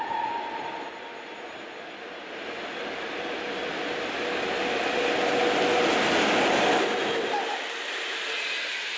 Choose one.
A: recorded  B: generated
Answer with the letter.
A